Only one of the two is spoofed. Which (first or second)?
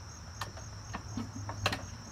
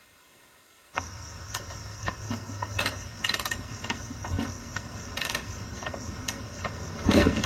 second